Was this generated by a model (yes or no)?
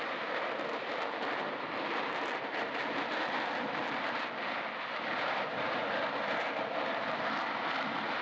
no